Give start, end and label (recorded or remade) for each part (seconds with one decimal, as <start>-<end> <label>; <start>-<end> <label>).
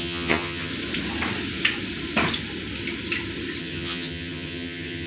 0.0-0.7 remade; 0.7-3.6 recorded; 3.6-5.1 remade